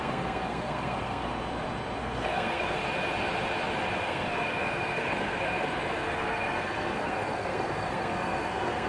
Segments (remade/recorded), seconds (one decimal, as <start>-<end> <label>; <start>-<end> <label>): 0.0-1.3 remade; 1.3-2.0 recorded; 2.0-2.8 remade; 2.8-4.0 recorded; 4.0-8.9 remade